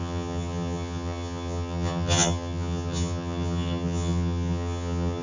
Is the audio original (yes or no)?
no